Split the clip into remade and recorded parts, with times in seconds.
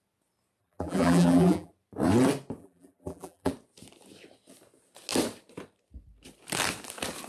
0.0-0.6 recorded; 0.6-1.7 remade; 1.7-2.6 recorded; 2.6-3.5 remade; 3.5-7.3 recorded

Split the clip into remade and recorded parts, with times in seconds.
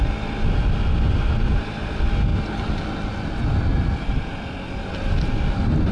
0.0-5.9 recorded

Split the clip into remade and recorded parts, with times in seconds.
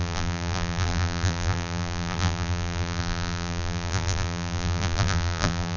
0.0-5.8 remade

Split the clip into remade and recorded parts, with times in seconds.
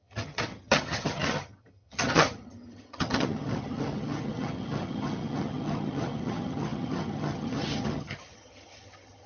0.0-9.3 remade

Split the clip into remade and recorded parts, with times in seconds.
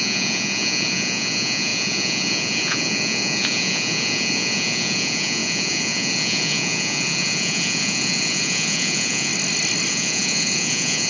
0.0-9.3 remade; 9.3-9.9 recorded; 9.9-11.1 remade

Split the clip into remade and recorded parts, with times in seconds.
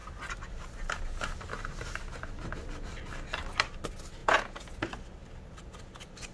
0.0-4.2 recorded; 4.2-4.7 remade; 4.7-6.3 recorded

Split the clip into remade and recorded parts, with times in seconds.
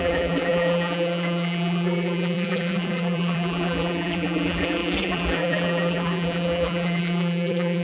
0.0-7.8 remade